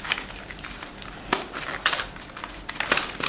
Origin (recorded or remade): recorded